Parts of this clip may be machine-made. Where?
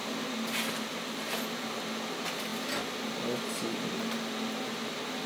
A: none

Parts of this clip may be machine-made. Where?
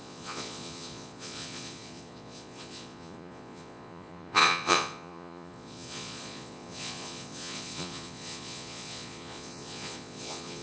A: 0.0-10.6 (vocoder, Vocos)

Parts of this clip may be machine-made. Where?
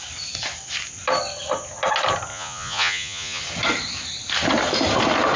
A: 2.3-3.4 (vocoder, Vocos)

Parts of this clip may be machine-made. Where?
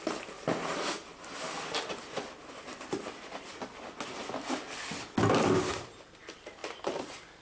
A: none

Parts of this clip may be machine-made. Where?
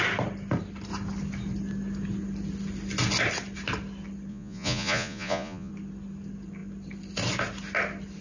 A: 4.3-5.7 (vocoder, Vocos)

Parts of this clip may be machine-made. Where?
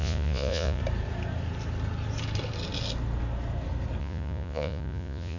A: 0.0-0.8 (vocoder, Vocos); 4.0-5.4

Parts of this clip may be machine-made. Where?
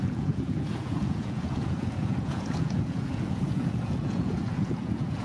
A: 0.0-5.2 (vocoder, Vocos)